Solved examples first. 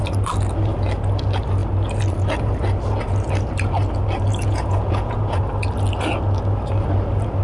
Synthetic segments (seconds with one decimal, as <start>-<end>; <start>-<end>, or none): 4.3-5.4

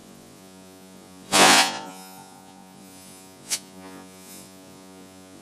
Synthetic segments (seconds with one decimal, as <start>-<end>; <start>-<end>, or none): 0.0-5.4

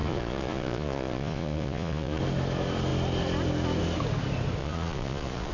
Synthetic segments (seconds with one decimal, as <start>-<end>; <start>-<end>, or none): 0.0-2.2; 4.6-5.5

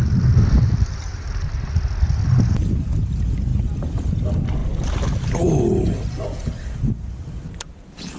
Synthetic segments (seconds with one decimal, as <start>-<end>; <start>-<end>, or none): none

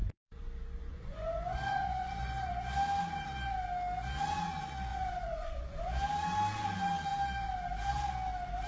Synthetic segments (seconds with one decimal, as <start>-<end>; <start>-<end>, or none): 0.0-2.5; 4.9-5.8